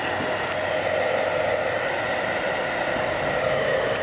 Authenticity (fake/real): real